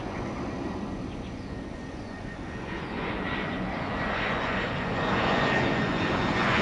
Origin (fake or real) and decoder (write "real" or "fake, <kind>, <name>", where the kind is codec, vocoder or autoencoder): fake, vocoder, Vocos